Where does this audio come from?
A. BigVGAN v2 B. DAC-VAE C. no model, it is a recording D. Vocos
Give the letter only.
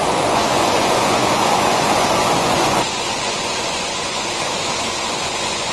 D